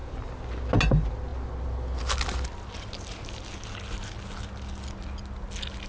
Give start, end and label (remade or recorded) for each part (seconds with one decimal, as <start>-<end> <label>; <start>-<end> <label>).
0.0-5.9 recorded